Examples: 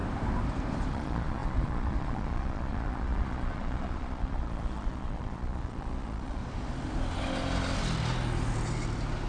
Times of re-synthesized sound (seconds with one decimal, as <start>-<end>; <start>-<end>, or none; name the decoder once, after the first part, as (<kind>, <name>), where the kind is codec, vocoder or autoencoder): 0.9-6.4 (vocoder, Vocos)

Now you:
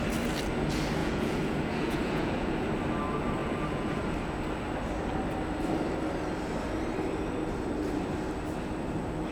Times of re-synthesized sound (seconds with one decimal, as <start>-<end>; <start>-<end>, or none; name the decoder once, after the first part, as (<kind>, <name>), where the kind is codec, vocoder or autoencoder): 1.0-2.7 (vocoder, Vocos); 3.4-4.0

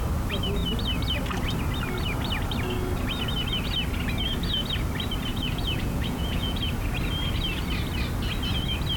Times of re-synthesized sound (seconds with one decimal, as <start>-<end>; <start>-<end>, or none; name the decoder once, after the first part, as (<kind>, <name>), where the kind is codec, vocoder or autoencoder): 5.3-6.6 (vocoder, Vocos)

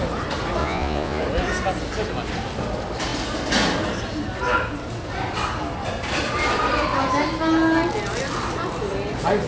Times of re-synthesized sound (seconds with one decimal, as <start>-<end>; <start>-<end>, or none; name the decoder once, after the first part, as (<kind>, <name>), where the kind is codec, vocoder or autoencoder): 0.6-1.2 (vocoder, Vocos)

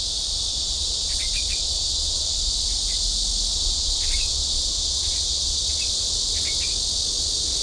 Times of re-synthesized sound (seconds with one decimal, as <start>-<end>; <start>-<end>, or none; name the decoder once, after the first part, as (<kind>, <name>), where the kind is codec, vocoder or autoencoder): 0.5-2.5 (vocoder, Vocos); 3.5-5.7

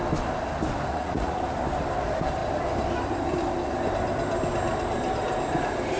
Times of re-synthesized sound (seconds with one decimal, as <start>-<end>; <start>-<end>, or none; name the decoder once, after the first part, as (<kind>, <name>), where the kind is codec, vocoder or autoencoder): 0.9-1.4 (vocoder, Vocos)